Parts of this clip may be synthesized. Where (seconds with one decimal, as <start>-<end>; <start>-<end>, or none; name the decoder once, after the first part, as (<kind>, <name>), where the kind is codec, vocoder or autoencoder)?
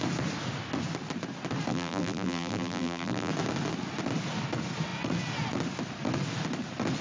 1.7-3.3 (vocoder, BigVGAN v2)